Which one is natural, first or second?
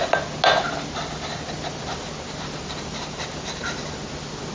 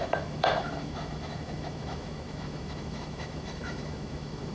first